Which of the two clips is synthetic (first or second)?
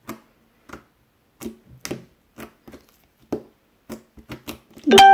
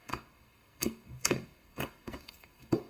second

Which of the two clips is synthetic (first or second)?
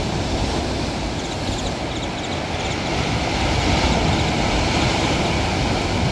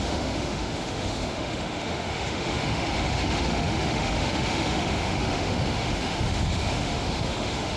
second